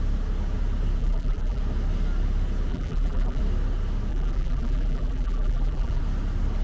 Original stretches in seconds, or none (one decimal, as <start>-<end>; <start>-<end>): 0.0-1.0; 1.6-2.7; 3.4-4.1; 6.0-6.6